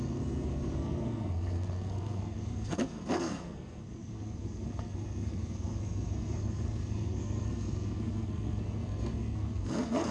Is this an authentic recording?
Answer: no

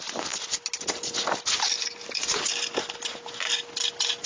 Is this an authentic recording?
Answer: yes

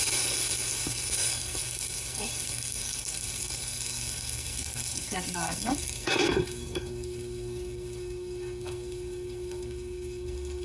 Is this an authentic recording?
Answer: no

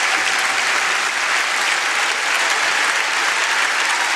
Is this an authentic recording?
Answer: yes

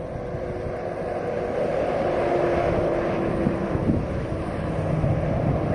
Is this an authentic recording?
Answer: yes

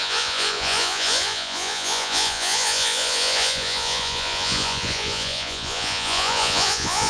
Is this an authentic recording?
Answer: no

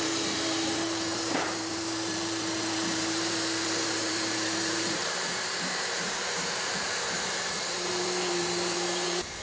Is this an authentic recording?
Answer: no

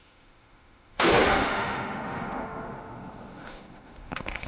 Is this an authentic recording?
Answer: no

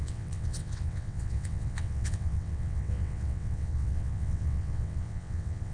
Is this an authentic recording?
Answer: no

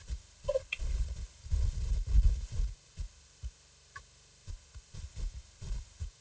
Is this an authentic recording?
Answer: yes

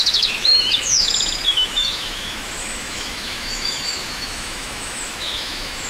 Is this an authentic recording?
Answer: no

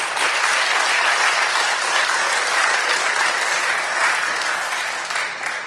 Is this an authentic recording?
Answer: no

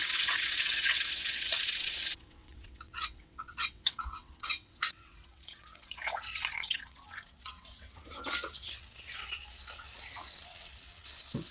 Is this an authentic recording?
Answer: no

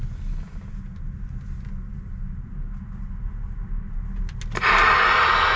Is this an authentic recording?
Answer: yes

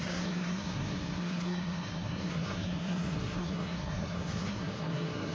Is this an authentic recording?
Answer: no